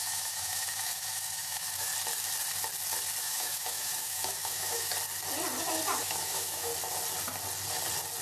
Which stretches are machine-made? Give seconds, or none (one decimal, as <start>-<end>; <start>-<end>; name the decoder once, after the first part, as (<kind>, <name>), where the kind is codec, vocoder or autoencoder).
0.0-1.9 (autoencoder, DAC-VAE); 3.2-4.9; 6.0-6.7